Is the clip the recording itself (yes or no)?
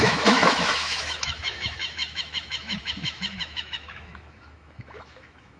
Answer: no